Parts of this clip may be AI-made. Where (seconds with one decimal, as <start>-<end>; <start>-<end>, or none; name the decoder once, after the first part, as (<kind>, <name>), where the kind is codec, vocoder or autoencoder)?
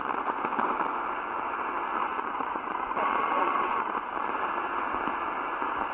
0.0-1.0 (vocoder, Vocos); 2.0-4.1